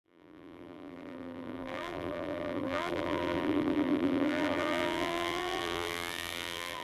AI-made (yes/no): yes